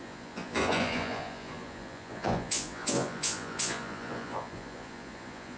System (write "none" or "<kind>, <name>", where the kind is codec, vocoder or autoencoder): vocoder, Vocos